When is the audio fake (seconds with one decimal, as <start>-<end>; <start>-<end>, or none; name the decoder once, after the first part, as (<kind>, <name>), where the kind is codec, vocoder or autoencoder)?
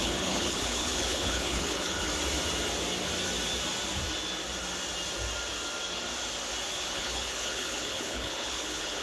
0.0-2.1 (codec, HILCodec); 6.7-9.0